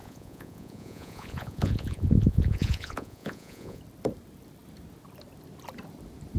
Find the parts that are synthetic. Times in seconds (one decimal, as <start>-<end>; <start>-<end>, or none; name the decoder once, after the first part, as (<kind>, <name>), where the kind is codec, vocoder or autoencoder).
0.0-3.8 (vocoder, Vocos)